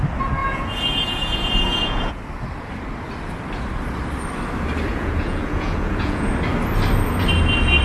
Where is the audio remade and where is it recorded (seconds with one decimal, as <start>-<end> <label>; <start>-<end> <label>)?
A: 0.0-0.4 recorded; 0.4-2.2 remade; 2.2-4.9 recorded; 4.9-6.3 remade; 6.3-7.8 recorded